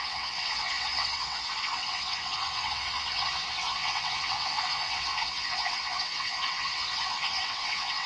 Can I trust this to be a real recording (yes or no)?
no